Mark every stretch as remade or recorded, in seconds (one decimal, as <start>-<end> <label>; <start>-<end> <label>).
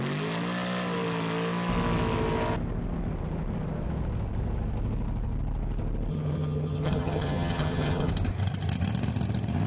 0.0-6.1 recorded; 6.1-8.1 remade; 8.1-9.7 recorded